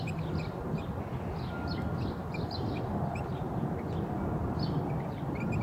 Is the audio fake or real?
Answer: real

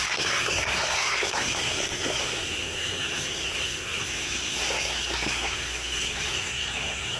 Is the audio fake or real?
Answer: fake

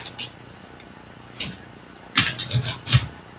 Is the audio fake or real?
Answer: real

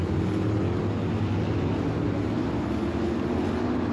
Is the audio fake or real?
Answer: real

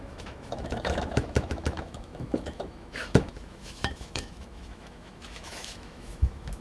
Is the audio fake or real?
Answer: fake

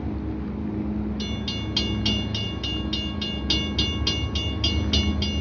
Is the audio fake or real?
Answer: real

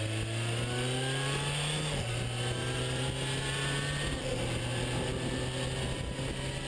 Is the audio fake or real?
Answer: real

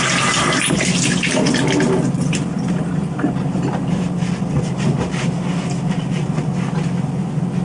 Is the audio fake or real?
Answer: real